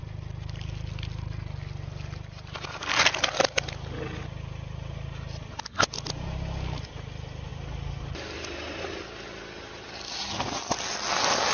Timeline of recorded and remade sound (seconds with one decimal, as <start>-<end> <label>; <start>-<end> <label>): 0.0-11.5 recorded